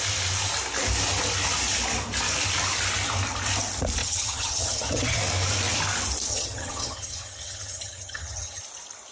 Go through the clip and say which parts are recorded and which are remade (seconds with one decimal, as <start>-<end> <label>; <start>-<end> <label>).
0.0-4.0 recorded; 4.0-5.2 remade; 5.2-6.3 recorded; 6.3-8.6 remade; 8.6-9.1 recorded